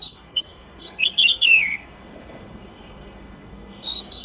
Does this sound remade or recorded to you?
remade